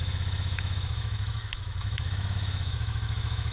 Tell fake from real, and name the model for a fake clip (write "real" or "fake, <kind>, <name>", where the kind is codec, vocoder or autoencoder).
fake, autoencoder, DAC-VAE